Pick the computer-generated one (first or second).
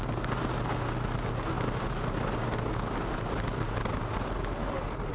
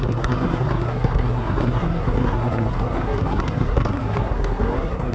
second